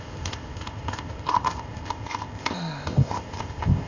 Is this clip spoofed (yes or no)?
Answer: yes